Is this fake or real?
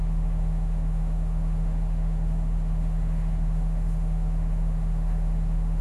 fake